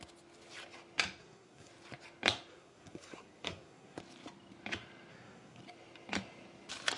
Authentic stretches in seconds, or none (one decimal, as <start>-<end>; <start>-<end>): 0.0-1.2; 1.7-2.5; 4.0-5.1; 5.6-7.0